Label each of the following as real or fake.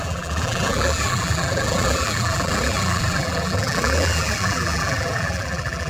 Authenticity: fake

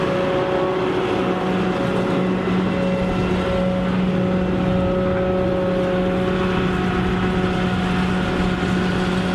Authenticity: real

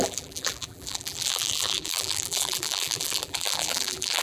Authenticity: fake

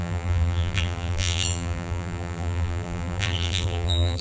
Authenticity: fake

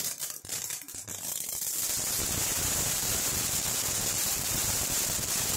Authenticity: fake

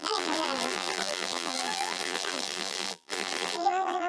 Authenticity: fake